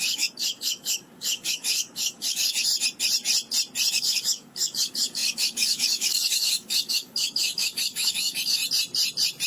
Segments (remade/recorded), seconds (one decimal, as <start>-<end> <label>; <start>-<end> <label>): 0.0-2.7 remade; 2.7-3.9 recorded; 3.9-8.6 remade; 8.6-9.5 recorded